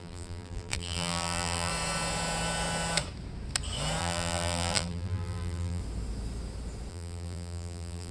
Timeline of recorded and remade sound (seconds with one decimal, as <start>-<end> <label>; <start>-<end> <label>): 0.0-1.7 remade; 1.7-4.0 recorded; 4.0-5.8 remade; 5.8-6.9 recorded; 6.9-8.1 remade